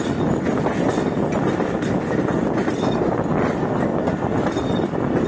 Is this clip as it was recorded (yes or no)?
yes